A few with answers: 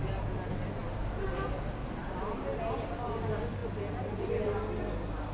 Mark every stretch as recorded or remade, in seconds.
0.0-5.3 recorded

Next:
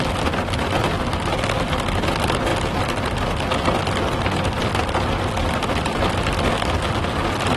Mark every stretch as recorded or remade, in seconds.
0.0-7.6 recorded